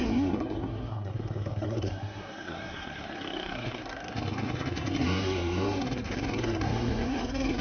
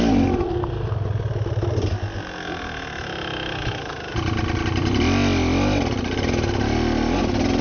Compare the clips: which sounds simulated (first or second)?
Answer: first